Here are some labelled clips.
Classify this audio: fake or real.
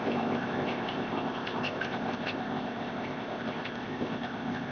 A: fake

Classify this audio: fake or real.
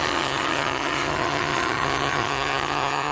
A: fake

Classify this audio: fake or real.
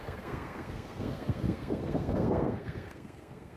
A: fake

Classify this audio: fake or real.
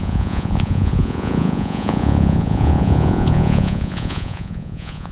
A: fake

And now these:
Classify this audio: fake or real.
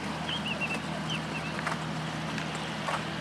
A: real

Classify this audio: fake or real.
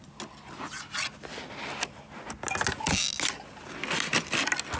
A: real